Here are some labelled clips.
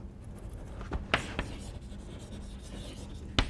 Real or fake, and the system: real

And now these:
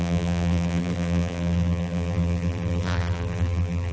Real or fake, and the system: fake, vocoder, BigVGAN v2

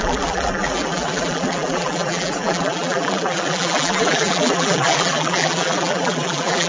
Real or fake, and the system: fake, vocoder, BigVGAN v2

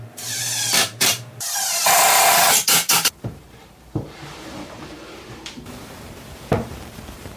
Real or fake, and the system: fake, vocoder, BigVGAN v2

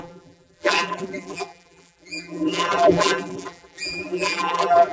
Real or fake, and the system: fake, vocoder, BigVGAN v2